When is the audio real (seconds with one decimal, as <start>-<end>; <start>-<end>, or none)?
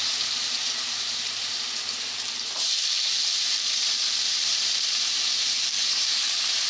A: none